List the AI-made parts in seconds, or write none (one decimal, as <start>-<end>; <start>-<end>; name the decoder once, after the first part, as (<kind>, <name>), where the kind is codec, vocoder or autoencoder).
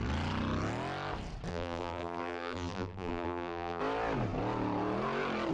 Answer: 1.5-3.8 (vocoder, BigVGAN v2)